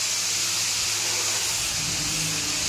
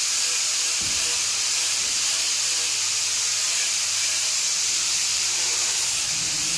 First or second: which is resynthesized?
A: second